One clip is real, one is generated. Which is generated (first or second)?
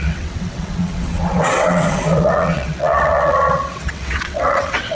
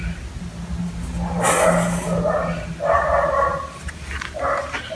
first